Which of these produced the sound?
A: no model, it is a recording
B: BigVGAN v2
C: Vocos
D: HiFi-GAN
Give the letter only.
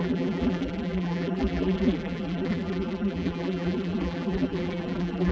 B